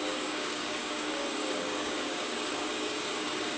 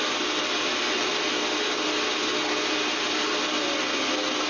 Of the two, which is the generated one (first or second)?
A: first